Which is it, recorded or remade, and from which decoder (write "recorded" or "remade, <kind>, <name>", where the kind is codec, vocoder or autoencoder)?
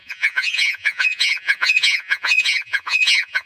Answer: remade, vocoder, Vocos